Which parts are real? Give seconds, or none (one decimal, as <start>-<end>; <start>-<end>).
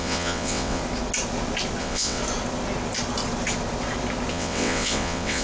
0.8-1.8; 2.2-4.3